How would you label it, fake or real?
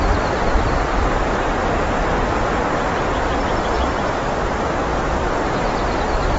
real